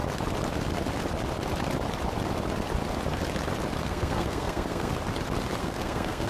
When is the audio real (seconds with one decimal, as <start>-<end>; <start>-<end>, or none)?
0.0-3.8; 4.9-5.6